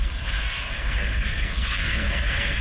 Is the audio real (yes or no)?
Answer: no